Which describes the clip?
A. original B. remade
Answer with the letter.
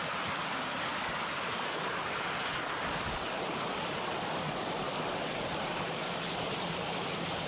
A